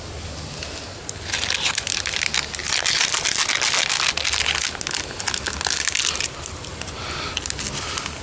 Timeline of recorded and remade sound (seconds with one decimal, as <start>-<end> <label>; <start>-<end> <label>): 0.0-2.6 recorded; 2.6-3.1 remade; 3.1-8.2 recorded